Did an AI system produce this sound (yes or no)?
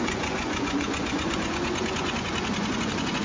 yes